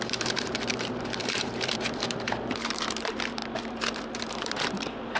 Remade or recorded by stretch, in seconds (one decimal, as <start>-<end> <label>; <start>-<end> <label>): 0.0-3.4 remade; 3.4-4.3 recorded; 4.3-5.2 remade